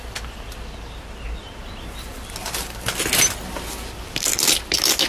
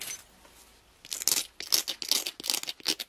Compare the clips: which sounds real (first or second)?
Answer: second